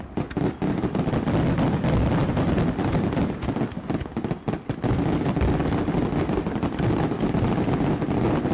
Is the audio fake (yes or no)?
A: no